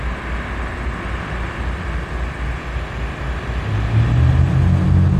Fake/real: real